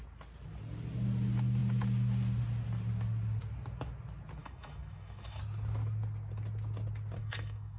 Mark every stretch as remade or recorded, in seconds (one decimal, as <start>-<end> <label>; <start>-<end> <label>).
0.0-4.4 recorded; 4.4-5.4 remade; 5.4-7.2 recorded; 7.2-7.8 remade